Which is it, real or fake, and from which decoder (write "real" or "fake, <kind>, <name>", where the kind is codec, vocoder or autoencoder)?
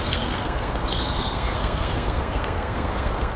fake, codec, SNAC